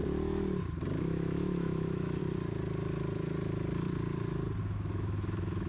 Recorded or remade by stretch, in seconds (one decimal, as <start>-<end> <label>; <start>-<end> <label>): 0.0-1.0 recorded; 1.0-2.2 remade; 2.2-4.6 recorded; 4.6-5.7 remade